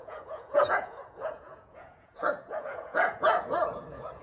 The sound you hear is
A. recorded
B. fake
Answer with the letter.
B